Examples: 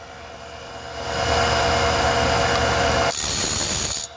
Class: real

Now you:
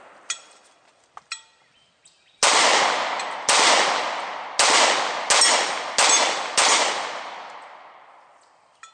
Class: real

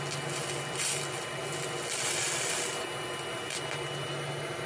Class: real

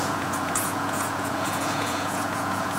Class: fake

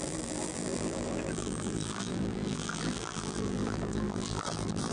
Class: fake